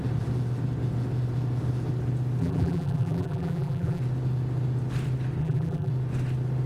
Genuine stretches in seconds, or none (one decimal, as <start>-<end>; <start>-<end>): 0.0-2.4; 4.0-5.4; 5.9-6.7